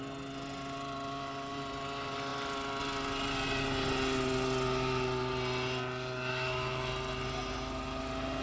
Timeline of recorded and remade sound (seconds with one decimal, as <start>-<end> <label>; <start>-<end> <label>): 0.0-6.3 recorded; 6.3-6.9 remade; 6.9-8.4 recorded